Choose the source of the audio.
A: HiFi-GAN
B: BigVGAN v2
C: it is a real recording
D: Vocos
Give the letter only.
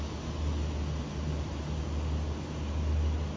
C